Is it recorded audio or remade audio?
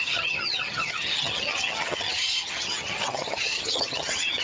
remade